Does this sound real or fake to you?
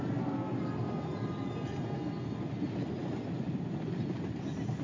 real